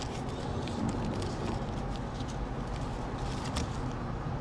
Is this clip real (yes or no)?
yes